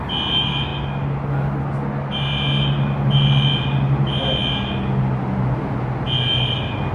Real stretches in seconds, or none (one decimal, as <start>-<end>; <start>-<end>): 0.0-6.9